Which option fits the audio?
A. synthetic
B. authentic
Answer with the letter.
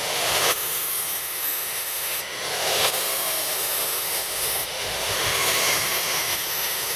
A